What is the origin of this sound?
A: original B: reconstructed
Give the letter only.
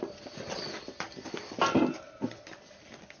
A